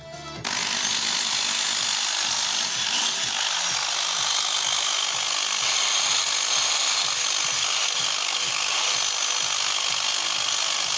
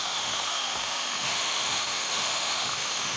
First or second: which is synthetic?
second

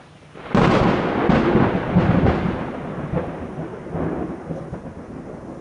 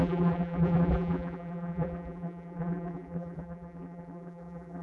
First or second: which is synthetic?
second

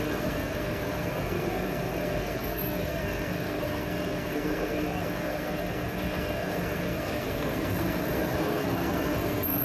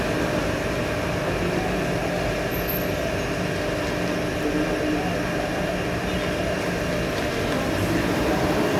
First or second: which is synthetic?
first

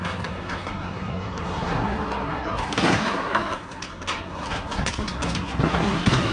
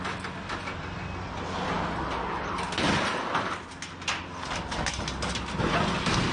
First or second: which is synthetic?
first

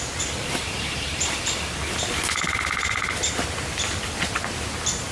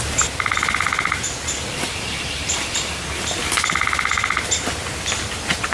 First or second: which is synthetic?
first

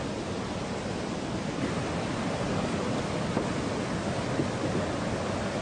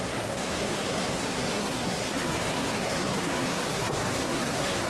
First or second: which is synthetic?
second